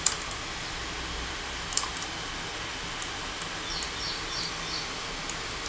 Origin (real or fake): real